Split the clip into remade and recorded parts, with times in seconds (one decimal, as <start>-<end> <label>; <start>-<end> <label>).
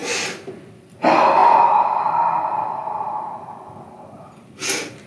0.0-0.5 remade; 0.5-1.4 recorded; 1.4-4.5 remade; 4.5-5.1 recorded